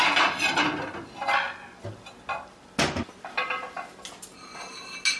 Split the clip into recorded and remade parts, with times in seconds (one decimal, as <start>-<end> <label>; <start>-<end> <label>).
0.0-5.2 recorded